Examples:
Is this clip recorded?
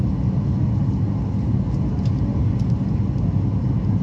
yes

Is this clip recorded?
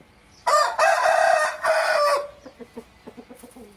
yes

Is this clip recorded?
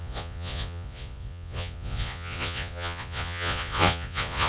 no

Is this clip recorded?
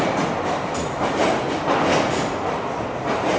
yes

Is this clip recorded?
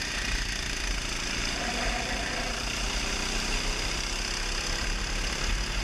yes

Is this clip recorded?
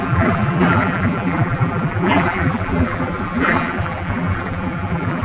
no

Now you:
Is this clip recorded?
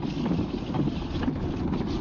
yes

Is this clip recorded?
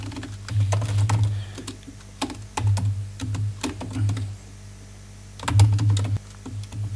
yes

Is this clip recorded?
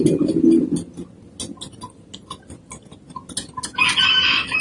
yes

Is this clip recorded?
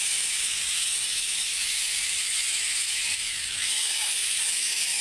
no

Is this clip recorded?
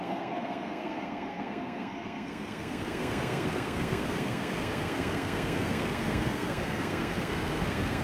no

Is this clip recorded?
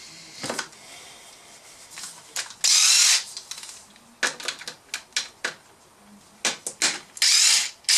yes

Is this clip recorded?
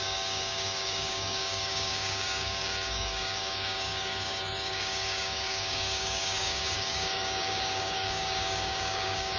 no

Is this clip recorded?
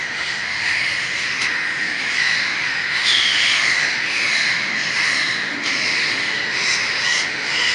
no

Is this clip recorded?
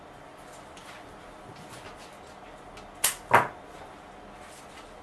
yes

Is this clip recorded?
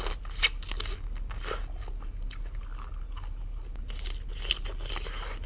yes